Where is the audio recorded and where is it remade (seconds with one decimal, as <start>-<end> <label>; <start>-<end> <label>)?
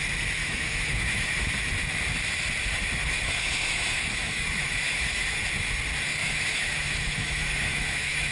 0.0-0.4 recorded; 0.4-1.5 remade; 1.5-3.0 recorded; 3.0-5.4 remade; 5.4-6.2 recorded; 6.2-8.3 remade